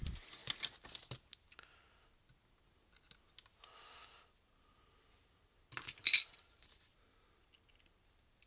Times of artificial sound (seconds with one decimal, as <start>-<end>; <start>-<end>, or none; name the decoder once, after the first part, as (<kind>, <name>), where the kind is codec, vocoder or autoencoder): 6.0-6.9 (vocoder, BigVGAN v2)